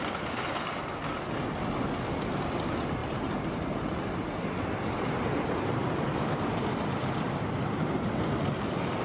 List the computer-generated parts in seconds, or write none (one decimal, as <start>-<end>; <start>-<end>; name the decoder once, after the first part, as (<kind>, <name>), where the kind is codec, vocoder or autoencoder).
3.0-7.2 (vocoder, BigVGAN v2)